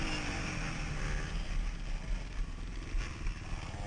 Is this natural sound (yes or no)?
yes